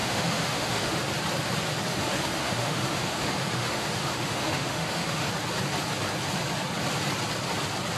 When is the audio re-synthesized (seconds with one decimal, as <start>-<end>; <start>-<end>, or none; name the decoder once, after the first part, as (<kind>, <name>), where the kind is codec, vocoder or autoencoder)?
0.0-1.0 (autoencoder, DAC-VAE); 1.9-5.3